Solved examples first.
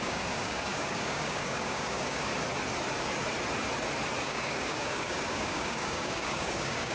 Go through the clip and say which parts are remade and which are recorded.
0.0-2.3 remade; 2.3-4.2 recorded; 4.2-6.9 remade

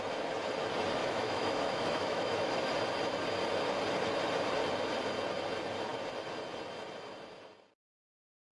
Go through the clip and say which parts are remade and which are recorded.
0.0-1.0 recorded; 1.0-2.7 remade; 2.7-8.5 recorded